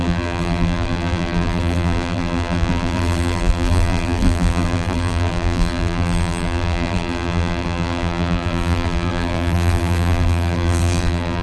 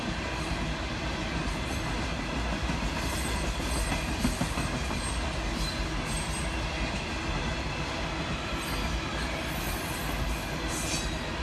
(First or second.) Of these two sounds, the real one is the second